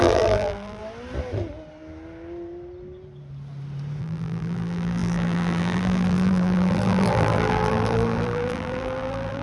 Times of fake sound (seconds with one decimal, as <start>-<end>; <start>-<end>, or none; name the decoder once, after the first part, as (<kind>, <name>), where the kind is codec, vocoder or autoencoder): 0.0-0.8 (vocoder, BigVGAN v2); 4.0-9.4